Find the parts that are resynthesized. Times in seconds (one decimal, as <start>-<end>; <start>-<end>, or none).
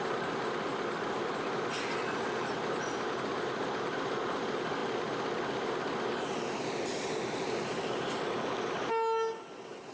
none